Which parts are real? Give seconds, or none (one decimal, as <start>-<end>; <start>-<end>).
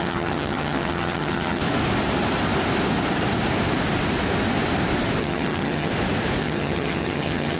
1.6-5.2; 5.9-6.4